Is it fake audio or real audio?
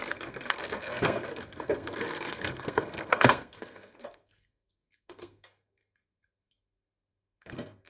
fake